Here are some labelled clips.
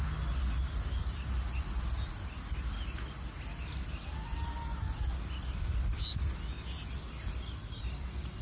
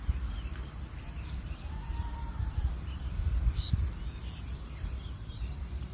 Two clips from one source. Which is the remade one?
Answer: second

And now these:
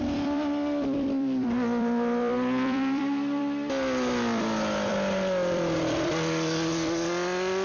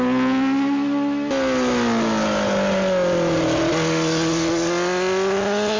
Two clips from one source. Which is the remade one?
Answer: first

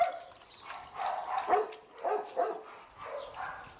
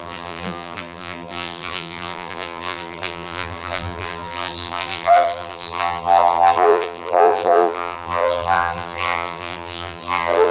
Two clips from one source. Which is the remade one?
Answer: second